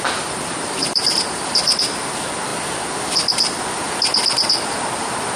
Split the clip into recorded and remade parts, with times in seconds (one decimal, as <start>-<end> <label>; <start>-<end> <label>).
0.0-5.4 recorded